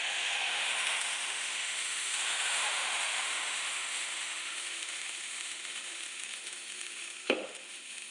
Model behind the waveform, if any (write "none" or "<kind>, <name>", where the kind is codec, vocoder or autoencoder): autoencoder, DAC-VAE